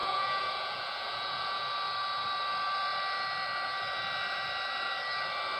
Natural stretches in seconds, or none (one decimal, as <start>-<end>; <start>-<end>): 1.6-5.6